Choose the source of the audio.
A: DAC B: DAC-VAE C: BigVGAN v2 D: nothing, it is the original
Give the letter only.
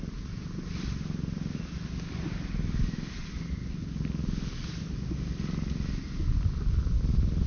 D